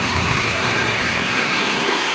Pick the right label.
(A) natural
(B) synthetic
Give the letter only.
B